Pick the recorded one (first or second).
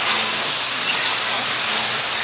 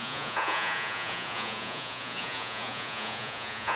first